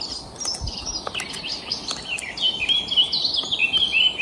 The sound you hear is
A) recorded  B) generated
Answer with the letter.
A